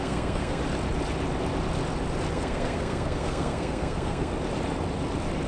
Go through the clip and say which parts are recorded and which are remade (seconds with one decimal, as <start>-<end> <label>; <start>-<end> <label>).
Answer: 0.0-0.6 remade; 0.6-2.3 recorded; 2.3-4.3 remade; 4.3-5.5 recorded